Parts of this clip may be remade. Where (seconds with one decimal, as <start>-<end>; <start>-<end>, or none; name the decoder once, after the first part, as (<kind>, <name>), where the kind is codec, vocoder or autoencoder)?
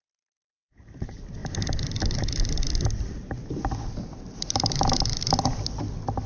none